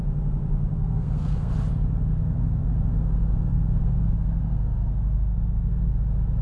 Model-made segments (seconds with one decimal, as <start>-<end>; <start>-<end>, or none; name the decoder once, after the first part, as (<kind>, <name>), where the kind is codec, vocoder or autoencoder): 0.7-1.5 (codec, SNAC); 2.1-5.9